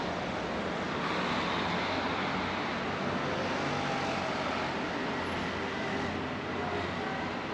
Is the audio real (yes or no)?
yes